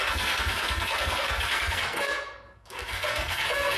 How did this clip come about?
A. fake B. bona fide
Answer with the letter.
A